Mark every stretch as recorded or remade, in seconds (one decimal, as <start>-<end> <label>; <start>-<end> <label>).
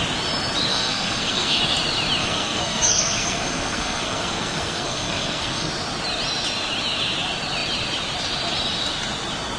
0.0-0.7 recorded; 0.7-1.6 remade; 1.6-2.2 recorded; 2.2-5.7 remade; 5.7-9.6 recorded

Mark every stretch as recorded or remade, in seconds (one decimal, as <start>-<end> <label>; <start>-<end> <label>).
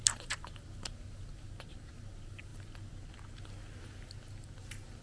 0.0-5.0 recorded